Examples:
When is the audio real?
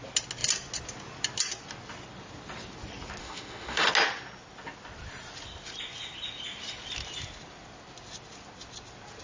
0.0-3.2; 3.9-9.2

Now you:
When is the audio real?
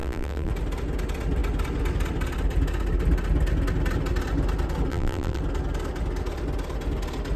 0.5-4.9; 5.4-7.4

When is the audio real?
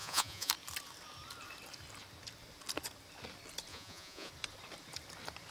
0.5-3.7; 4.3-5.5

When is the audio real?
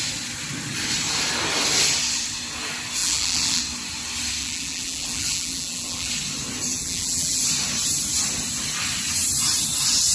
0.0-3.0; 3.6-4.4; 6.1-6.7; 7.4-10.1